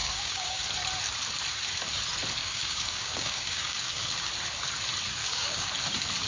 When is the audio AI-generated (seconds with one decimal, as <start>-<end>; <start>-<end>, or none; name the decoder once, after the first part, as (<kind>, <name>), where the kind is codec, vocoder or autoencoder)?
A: 0.0-0.6 (codec, DAC); 2.4-4.3; 5.2-5.7